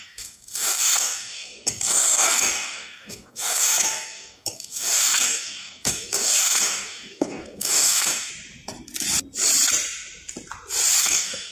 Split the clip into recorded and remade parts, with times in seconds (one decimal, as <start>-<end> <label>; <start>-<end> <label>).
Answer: 0.0-8.3 remade; 8.3-11.0 recorded; 11.0-11.5 remade